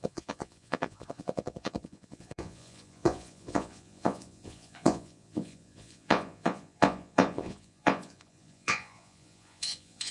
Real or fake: fake